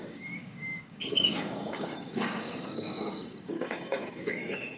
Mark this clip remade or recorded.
remade